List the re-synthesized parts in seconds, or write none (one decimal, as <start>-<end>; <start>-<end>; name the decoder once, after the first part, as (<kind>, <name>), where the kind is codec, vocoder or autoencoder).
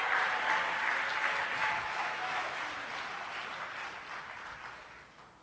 1.6-2.6 (autoencoder, DAC-VAE)